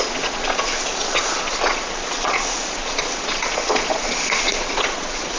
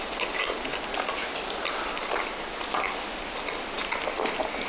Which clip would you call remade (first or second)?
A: first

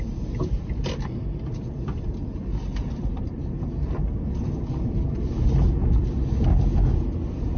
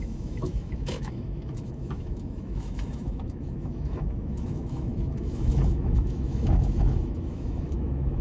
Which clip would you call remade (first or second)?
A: second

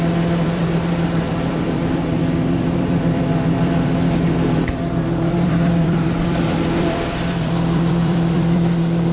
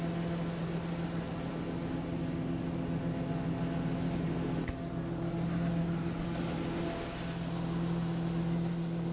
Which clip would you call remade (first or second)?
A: first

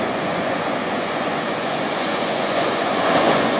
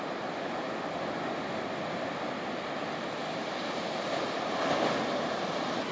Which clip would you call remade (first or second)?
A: first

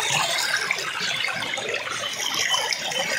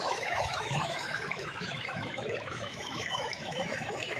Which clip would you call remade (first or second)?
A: second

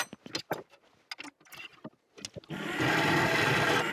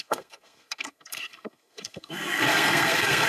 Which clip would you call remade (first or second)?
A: second